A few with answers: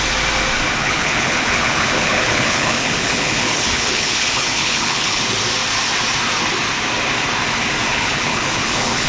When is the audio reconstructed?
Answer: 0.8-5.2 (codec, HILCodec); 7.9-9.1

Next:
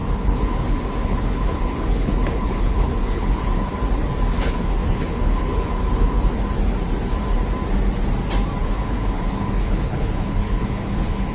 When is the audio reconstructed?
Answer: 0.0-3.7 (codec, HILCodec); 4.3-6.4; 8.6-11.3

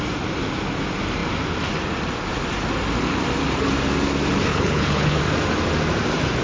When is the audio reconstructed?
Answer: 4.5-5.2 (codec, HILCodec)

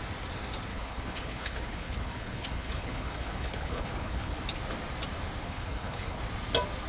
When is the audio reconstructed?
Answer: 0.7-4.4 (codec, HILCodec); 5.4-6.2

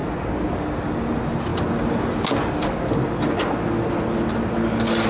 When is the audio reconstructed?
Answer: none